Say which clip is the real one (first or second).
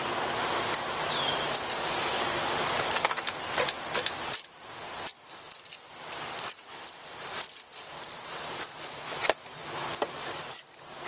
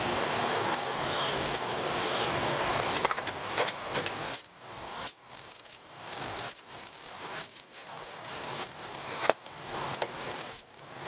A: first